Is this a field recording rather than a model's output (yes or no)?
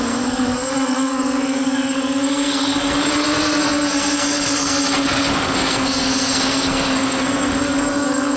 no